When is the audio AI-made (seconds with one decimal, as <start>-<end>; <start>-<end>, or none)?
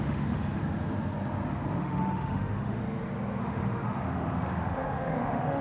0.0-0.6; 1.8-2.8; 3.4-5.6